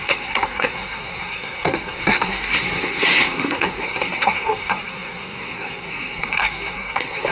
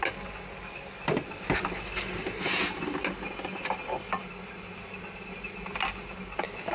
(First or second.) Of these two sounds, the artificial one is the first